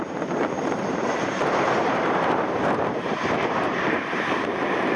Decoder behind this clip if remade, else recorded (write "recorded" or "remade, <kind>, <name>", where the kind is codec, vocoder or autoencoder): remade, vocoder, BigVGAN v2